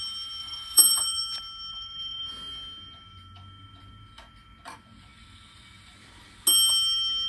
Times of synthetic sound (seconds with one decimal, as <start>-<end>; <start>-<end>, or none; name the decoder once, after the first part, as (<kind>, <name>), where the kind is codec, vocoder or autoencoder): 0.4-1.2 (vocoder, BigVGAN v2); 1.7-2.3